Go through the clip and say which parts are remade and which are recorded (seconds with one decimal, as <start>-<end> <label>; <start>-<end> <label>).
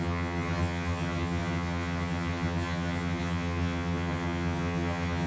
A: 0.0-5.3 remade